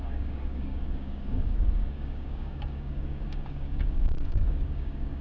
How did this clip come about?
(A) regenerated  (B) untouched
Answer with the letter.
A